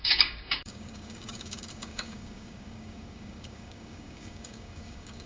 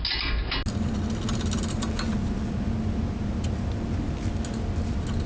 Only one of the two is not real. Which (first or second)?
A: first